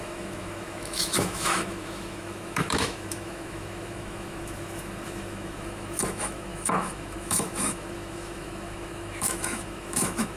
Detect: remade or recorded remade